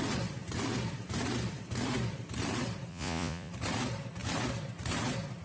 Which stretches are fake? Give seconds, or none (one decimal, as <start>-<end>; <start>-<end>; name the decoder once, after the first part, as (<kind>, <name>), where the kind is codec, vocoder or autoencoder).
2.9-3.5 (vocoder, Vocos)